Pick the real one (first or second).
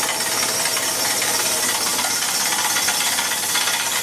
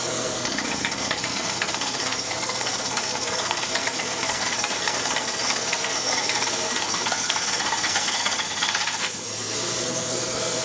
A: first